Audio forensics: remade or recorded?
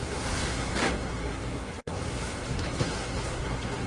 remade